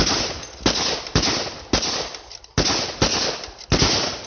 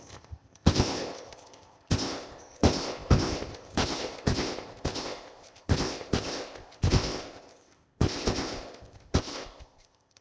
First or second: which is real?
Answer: first